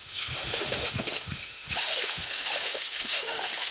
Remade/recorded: remade